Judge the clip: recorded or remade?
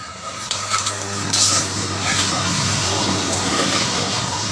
remade